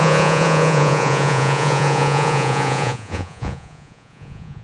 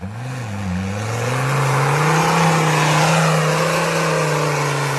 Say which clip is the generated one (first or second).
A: first